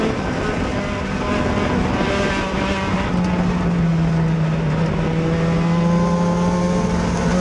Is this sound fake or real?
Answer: real